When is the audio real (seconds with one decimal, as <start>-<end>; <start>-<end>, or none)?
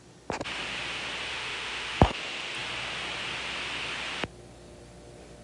0.0-1.3; 2.2-5.4